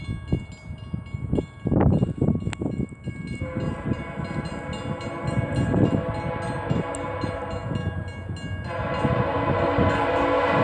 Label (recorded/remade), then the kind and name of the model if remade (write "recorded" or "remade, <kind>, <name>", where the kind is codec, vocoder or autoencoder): recorded